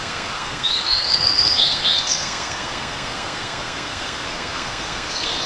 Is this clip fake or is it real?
fake